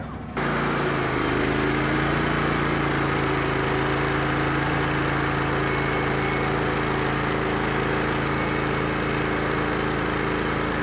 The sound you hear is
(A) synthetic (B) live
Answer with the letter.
B